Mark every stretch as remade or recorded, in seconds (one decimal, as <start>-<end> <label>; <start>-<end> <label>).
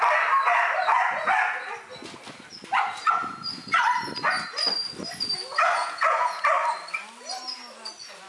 0.0-5.8 recorded; 5.8-6.4 remade; 6.4-8.3 recorded